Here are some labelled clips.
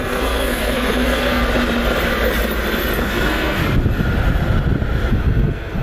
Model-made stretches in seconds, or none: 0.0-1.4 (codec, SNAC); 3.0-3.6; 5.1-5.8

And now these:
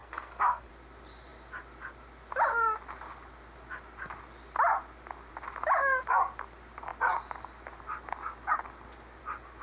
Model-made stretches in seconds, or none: 0.0-0.7 (codec, SNAC)

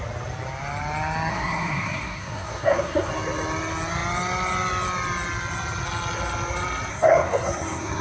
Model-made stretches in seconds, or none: 1.3-3.1 (codec, SNAC); 6.9-8.0

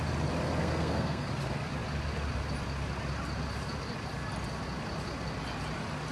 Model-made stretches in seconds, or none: 0.6-1.3 (codec, SNAC)

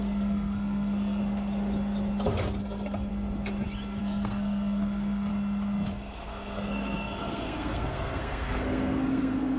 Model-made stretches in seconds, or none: 0.0-1.2 (codec, SNAC); 2.6-3.1; 4.0-5.3; 5.9-9.6